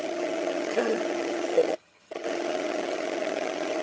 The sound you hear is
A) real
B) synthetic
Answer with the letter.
B